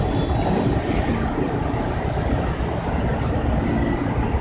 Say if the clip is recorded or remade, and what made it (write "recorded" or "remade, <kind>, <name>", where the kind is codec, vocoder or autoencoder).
recorded